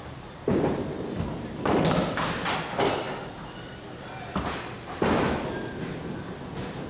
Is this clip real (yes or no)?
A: yes